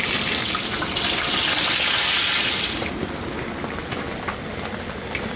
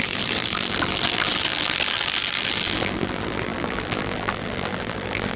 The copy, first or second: second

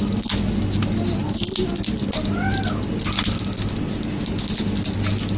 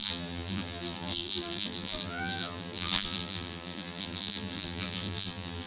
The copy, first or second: second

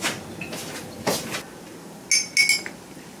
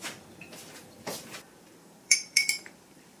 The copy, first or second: second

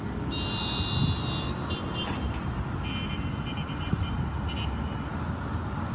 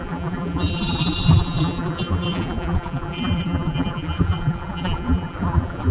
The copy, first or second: second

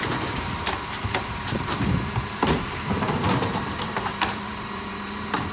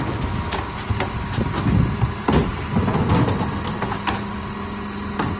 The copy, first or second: first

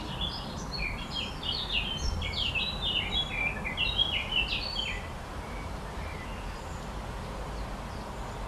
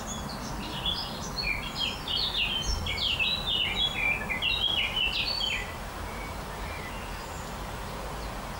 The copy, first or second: first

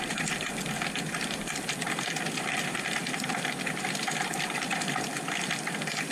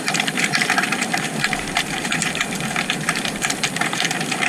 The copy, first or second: second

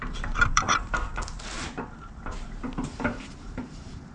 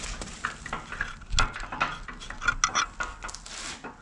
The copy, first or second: first